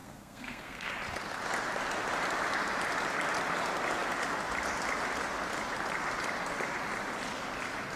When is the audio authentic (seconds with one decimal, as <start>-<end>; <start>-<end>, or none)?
0.9-8.0